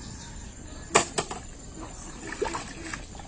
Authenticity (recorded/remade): recorded